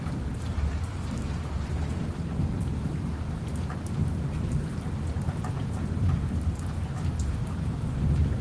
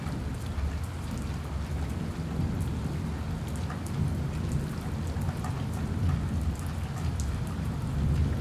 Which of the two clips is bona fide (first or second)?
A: second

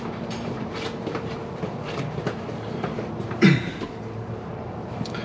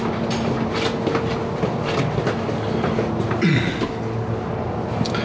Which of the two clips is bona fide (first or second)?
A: second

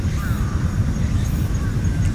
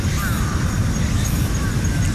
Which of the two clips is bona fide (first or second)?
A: second